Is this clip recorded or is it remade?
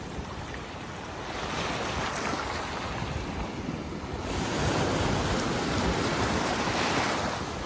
recorded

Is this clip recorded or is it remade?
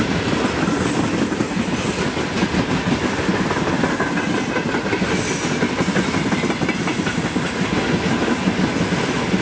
recorded